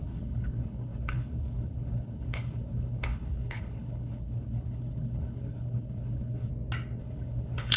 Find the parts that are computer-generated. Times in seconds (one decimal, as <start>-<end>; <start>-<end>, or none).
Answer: 0.0-6.5; 7.0-7.8